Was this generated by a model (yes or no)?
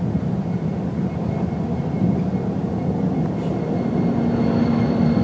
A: no